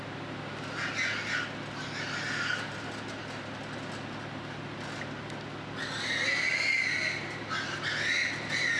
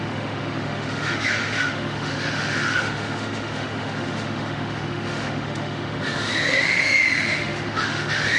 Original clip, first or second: first